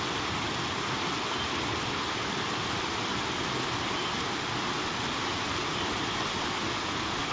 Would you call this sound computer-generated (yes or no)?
no